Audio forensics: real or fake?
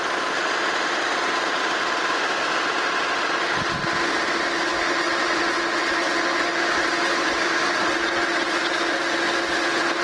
real